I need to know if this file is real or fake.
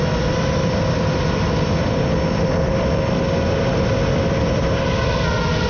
real